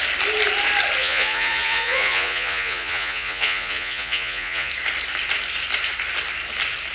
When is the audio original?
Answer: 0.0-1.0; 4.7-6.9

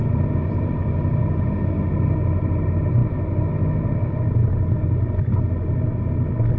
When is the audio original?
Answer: 0.0-6.6

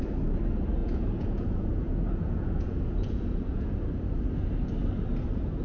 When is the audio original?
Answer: 0.0-0.8; 3.8-5.6

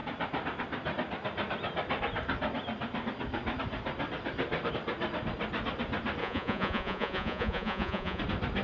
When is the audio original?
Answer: 0.0-6.2; 8.2-8.6

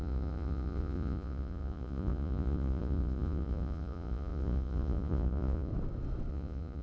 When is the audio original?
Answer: 5.7-6.3